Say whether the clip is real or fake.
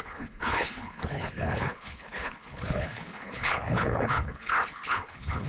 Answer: fake